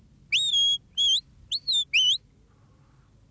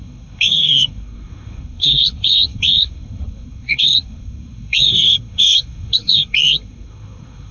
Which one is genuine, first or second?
first